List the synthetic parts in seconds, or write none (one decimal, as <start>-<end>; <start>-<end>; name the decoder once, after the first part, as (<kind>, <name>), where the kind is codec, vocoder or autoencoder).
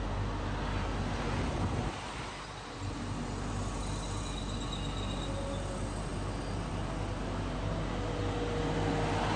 none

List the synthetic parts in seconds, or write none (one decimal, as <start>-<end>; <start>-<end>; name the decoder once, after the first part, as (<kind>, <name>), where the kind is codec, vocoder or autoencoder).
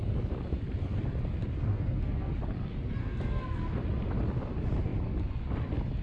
1.7-2.3 (codec, SNAC); 3.0-3.7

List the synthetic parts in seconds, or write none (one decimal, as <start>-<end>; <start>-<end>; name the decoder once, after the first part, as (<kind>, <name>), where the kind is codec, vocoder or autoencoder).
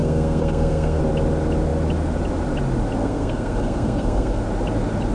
0.0-1.0 (codec, SNAC); 3.0-4.4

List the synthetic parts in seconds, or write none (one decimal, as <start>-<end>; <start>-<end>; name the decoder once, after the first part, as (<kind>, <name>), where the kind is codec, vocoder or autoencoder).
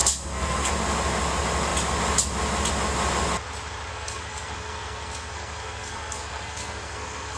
0.0-0.7 (codec, SNAC); 3.9-7.4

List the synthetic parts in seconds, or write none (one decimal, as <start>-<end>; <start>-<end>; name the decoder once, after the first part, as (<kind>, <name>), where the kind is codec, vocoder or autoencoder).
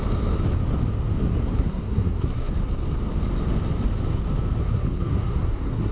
1.4-2.5 (codec, SNAC); 4.6-5.9